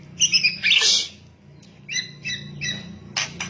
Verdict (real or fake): real